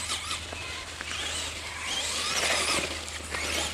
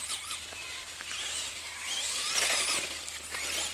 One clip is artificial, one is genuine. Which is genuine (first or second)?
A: first